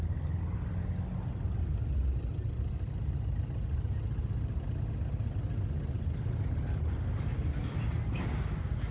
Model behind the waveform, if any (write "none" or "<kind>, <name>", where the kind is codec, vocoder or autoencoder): none